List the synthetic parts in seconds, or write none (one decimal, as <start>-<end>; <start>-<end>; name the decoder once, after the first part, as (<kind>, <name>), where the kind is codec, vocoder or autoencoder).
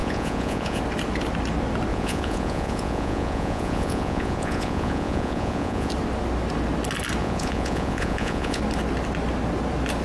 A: 0.0-0.8 (vocoder, Vocos); 1.9-5.9; 7.2-8.6